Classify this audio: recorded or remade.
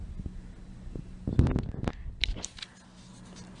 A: recorded